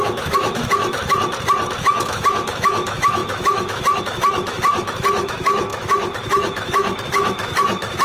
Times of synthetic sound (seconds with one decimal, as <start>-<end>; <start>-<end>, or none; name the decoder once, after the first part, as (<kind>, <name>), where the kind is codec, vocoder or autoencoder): 0.0-1.0 (autoencoder, DAC-VAE); 1.8-8.0

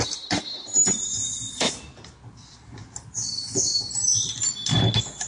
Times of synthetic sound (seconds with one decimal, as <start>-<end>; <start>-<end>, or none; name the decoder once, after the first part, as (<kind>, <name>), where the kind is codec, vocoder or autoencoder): none

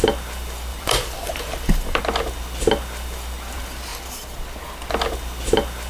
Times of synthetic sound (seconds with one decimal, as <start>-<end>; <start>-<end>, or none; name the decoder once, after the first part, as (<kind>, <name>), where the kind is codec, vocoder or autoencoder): 0.7-2.0 (vocoder, BigVGAN v2)

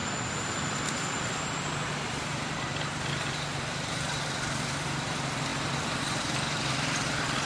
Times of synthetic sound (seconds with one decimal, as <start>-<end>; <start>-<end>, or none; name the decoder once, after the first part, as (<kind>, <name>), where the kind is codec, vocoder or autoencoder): 3.3-5.5 (vocoder, BigVGAN v2); 6.0-7.5

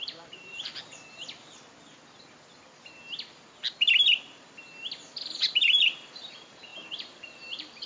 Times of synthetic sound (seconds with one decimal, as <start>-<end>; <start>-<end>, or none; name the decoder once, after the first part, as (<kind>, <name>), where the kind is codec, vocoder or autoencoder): 0.0-0.7 (vocoder, BigVGAN v2); 5.4-7.9

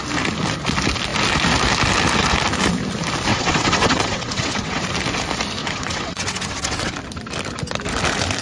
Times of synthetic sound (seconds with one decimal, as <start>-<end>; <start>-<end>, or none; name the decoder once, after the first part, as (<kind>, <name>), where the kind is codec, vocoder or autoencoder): 3.3-4.8 (vocoder, WaveNeXt); 5.6-6.9

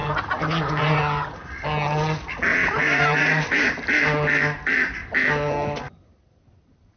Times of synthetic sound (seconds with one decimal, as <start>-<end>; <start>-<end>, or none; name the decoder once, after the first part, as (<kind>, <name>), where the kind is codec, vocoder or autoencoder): 0.0-1.0 (vocoder, BigVGAN v2); 2.5-3.6